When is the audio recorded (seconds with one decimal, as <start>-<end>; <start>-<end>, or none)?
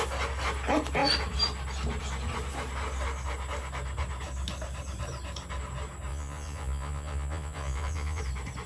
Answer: 0.0-6.1; 8.2-8.7